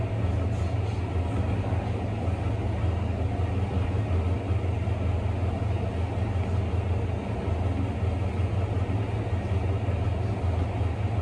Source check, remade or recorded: recorded